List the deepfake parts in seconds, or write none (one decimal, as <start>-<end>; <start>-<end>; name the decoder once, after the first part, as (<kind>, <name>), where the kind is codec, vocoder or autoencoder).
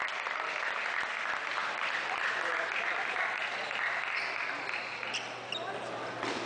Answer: 1.6-5.5 (vocoder, BigVGAN v2)